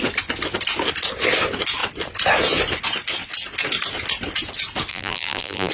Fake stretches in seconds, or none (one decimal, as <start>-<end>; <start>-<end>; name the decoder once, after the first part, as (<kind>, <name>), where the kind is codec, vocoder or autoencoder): 4.9-5.7 (vocoder, BigVGAN v2)